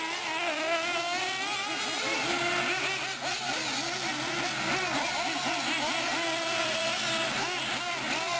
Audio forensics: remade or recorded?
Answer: recorded